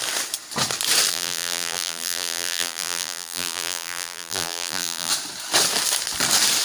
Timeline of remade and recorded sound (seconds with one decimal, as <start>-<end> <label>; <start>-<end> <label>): 0.0-1.1 recorded; 1.1-5.1 remade; 5.1-6.6 recorded